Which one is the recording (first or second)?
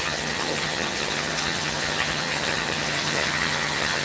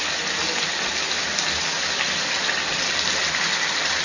second